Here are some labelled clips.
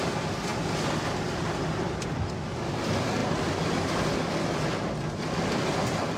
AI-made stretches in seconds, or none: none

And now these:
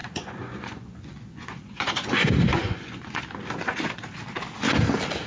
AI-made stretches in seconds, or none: 0.0-3.2 (vocoder, Vocos)

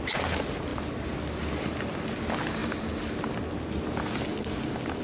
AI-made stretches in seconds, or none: none

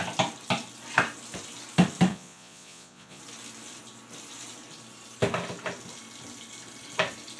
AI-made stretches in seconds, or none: 2.1-3.2 (vocoder, Vocos)

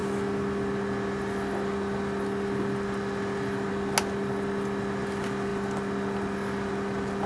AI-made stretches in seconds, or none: none

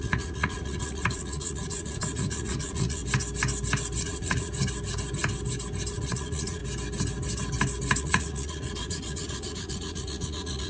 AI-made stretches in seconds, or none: 0.0-3.0 (vocoder, Vocos); 4.0-4.5; 5.9-6.6; 8.0-10.7

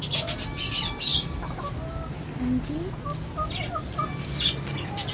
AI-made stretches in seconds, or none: none